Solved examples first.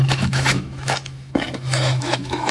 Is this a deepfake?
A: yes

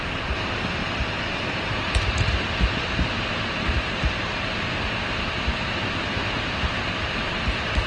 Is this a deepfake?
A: yes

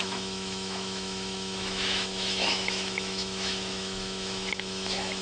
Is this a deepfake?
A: yes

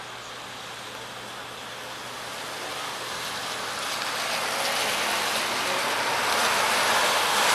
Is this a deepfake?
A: no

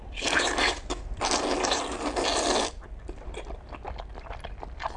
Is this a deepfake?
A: no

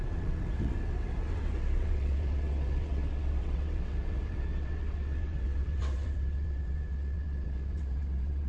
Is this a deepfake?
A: yes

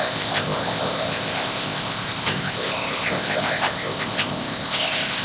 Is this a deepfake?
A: yes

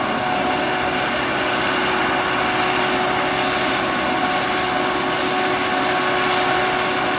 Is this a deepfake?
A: no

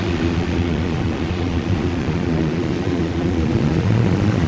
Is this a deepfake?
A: yes